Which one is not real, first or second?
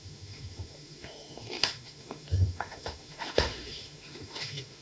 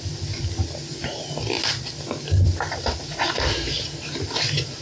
first